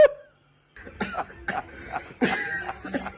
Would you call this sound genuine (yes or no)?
yes